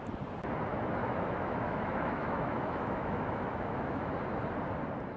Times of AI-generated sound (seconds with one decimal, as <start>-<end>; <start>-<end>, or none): 1.0-4.1